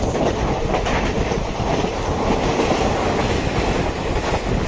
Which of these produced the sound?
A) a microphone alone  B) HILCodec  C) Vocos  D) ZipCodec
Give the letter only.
A